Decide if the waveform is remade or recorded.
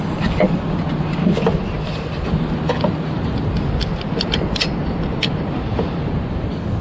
recorded